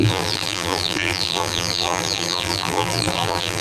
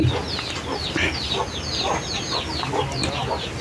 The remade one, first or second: first